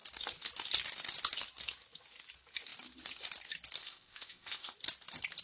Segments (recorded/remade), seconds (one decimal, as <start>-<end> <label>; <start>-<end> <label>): 0.0-3.8 recorded; 3.8-4.7 remade; 4.7-5.4 recorded